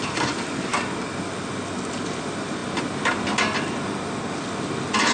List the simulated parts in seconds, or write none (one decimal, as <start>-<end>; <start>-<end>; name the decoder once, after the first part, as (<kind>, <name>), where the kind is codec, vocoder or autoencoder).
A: none